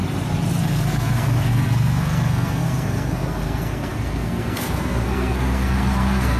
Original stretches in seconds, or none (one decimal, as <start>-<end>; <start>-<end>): 0.0-0.6